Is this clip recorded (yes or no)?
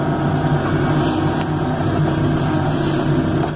yes